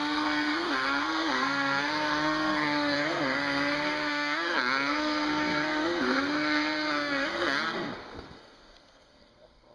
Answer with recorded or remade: remade